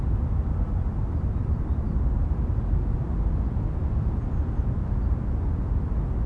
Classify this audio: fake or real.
real